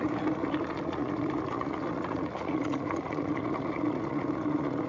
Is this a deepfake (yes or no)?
yes